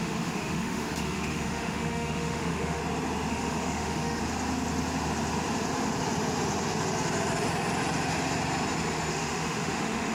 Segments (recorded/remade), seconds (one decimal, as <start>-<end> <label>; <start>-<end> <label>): 0.0-2.8 remade; 2.8-3.3 recorded; 3.3-4.2 remade; 4.2-9.1 recorded; 9.1-10.1 remade